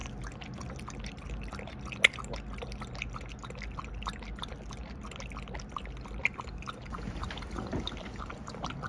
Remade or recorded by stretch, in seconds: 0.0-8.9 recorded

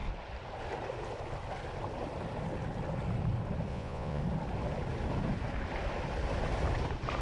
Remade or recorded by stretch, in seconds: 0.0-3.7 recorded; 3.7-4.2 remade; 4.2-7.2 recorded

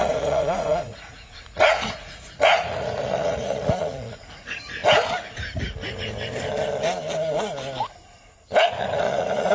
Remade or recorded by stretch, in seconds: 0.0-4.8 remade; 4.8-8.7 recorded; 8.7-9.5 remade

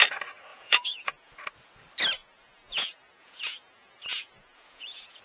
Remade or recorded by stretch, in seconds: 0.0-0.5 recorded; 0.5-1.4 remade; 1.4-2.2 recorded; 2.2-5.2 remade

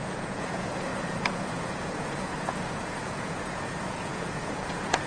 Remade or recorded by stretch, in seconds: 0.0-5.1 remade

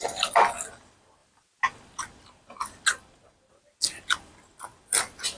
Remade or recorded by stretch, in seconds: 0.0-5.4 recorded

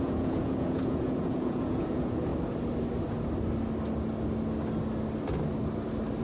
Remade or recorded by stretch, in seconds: 0.0-2.3 remade; 2.3-6.2 recorded

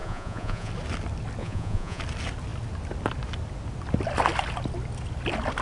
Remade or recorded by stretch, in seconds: 0.0-0.7 remade; 0.7-1.4 recorded; 1.4-2.0 remade; 2.0-5.6 recorded